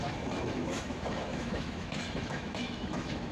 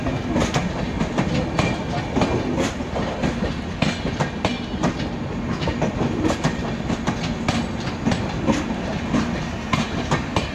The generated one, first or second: first